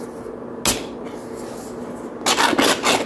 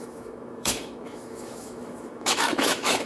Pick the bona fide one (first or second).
first